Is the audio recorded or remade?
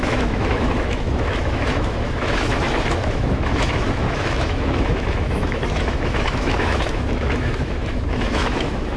remade